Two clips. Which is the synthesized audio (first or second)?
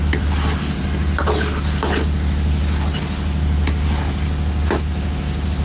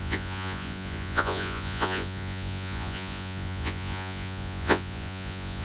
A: second